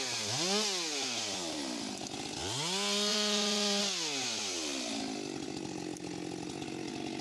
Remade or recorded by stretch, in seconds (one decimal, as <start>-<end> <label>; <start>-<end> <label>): 0.0-3.1 recorded; 3.1-3.8 remade; 3.8-7.2 recorded